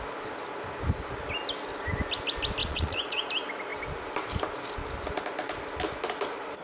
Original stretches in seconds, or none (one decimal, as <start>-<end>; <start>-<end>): 0.0-2.6; 3.3-6.6